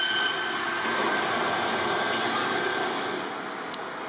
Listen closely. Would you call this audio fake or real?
real